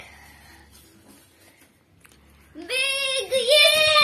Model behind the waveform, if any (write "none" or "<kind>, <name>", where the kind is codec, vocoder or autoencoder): none